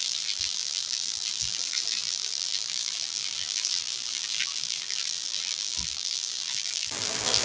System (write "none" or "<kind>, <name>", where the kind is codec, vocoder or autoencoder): vocoder, BigVGAN v2